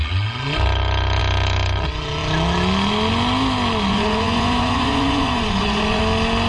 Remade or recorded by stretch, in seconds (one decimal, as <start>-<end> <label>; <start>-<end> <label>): 0.0-3.9 recorded; 3.9-6.0 remade; 6.0-6.5 recorded